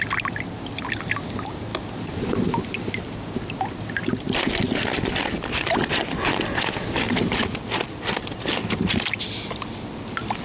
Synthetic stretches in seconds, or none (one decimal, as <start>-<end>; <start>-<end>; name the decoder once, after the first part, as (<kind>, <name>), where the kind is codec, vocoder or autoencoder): none